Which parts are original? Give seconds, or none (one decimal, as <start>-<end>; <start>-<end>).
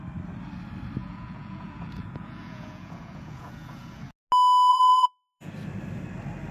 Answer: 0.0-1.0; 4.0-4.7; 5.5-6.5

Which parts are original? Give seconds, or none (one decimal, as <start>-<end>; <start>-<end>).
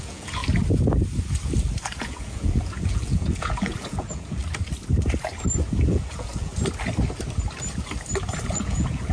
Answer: 0.4-2.0; 4.4-5.9; 6.5-8.5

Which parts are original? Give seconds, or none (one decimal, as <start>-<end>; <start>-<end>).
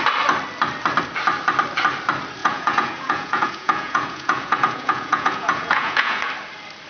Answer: 0.0-2.4; 6.3-6.9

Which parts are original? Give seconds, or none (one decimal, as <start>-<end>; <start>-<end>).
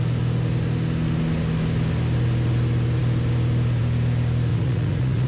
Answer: 0.0-4.5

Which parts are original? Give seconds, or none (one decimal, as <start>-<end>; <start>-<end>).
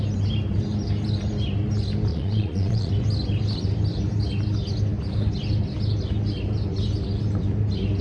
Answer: 0.0-2.1; 2.9-8.0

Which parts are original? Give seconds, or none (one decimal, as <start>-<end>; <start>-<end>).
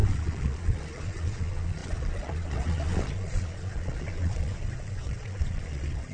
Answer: none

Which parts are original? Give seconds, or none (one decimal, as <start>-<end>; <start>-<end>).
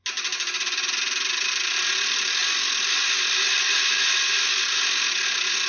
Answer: 0.0-5.7